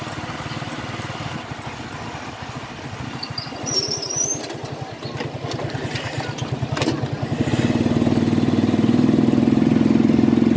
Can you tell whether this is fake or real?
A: real